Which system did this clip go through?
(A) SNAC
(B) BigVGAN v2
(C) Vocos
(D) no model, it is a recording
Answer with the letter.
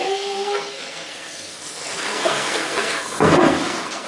A